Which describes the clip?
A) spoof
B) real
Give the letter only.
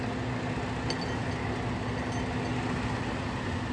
B